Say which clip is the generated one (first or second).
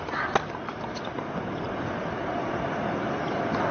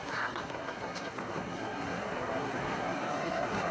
second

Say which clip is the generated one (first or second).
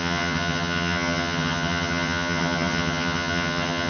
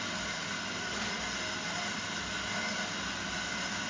first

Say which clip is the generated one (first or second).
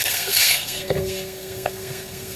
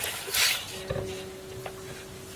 first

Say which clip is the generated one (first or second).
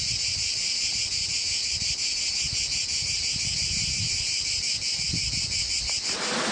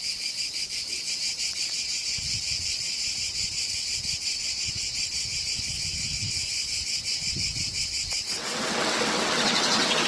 second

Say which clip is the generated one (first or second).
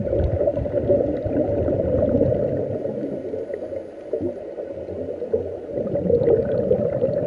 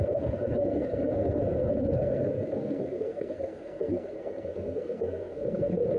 second